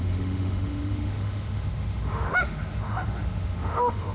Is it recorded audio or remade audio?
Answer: remade